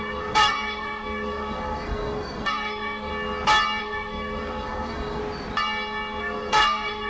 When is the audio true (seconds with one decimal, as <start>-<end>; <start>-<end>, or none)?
3.1-3.8; 5.2-6.2